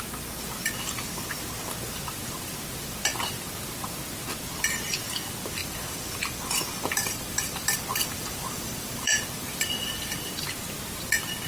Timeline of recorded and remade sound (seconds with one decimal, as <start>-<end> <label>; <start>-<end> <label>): 0.0-5.6 recorded; 5.6-10.3 remade; 10.3-11.5 recorded